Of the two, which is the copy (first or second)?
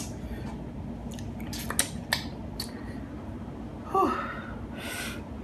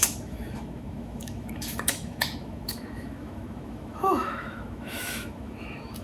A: second